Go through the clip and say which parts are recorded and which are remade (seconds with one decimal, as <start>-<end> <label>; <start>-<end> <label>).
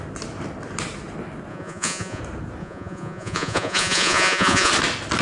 0.0-1.5 recorded; 1.5-2.2 remade; 2.2-2.6 recorded; 2.6-4.7 remade; 4.7-5.2 recorded